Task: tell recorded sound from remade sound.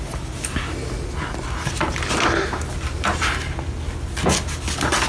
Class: recorded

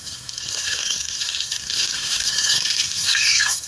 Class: remade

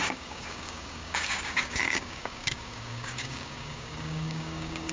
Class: remade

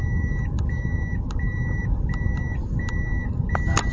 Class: recorded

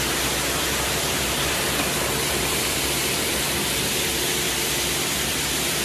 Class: remade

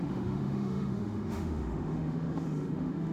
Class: remade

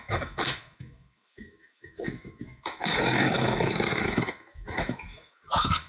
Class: remade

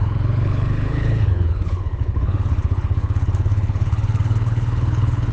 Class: remade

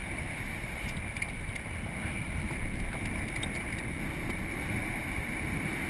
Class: recorded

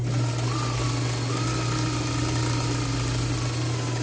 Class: recorded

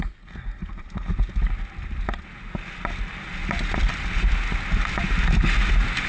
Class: recorded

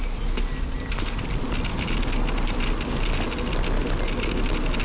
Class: recorded